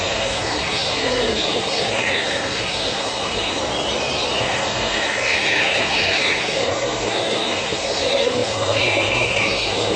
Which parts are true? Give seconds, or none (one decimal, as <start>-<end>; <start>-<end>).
3.6-4.4

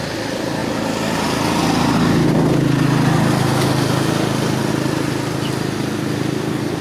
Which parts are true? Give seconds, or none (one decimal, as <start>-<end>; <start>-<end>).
0.0-6.8

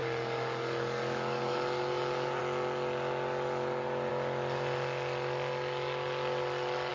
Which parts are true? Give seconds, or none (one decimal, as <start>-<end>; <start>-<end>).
2.4-6.9

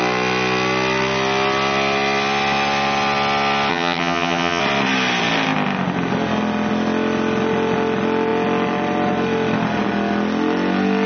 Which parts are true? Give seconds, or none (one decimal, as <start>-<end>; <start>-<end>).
0.0-3.7; 4.6-11.1

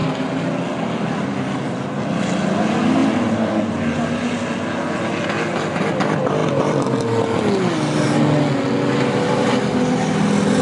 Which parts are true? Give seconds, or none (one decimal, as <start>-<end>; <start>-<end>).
0.0-10.6

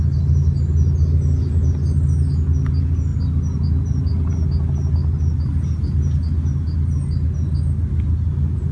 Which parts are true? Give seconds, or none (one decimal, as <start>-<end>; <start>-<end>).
0.0-8.7

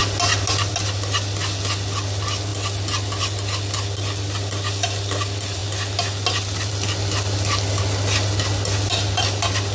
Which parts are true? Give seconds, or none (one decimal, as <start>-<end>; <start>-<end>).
0.0-9.7